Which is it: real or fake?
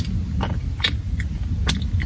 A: real